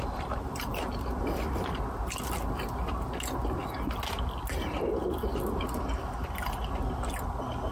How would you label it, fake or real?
real